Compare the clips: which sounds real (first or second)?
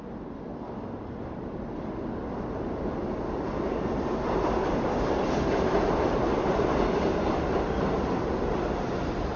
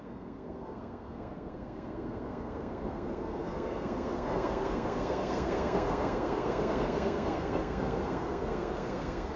first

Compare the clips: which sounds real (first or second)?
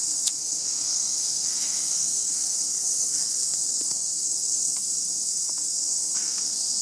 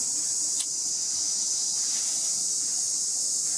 second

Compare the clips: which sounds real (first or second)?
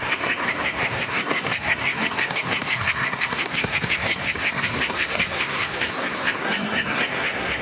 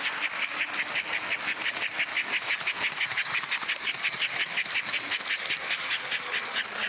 second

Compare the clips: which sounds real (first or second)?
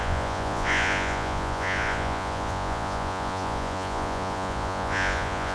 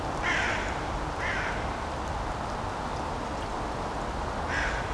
second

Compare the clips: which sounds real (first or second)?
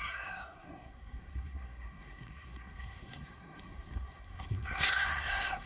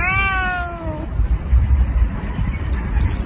second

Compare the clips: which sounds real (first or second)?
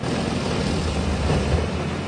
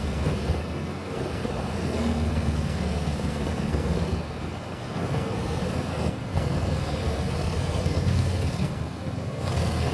first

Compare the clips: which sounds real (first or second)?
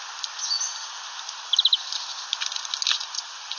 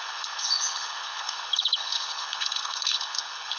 first